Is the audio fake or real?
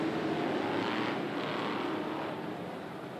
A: real